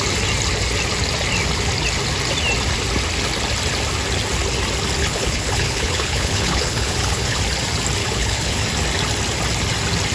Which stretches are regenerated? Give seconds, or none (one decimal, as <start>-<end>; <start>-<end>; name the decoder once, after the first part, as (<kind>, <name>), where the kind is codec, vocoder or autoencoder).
5.0-7.4 (codec, HILCodec); 8.0-8.6